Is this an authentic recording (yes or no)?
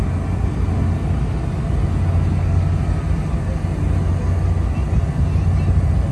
yes